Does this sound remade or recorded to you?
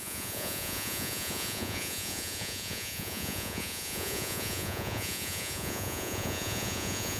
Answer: remade